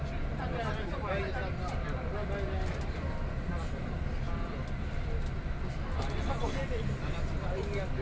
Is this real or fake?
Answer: real